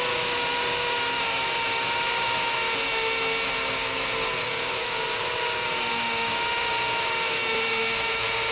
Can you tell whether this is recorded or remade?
recorded